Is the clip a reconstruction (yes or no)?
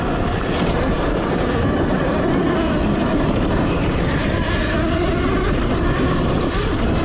no